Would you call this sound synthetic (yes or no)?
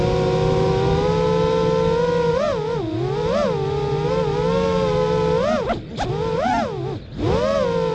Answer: no